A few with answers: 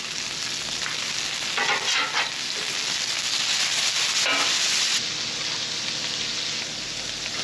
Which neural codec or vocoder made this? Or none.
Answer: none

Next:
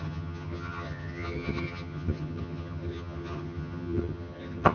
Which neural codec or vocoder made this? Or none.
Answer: vocoder, HiFi-GAN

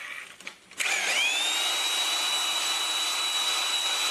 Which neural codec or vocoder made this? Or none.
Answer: none